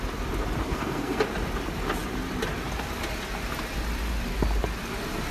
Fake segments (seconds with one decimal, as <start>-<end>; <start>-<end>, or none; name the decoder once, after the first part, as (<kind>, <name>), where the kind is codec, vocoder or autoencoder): 0.6-1.2 (codec, SNAC)